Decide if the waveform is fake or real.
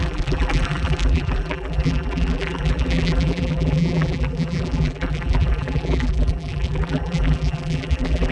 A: fake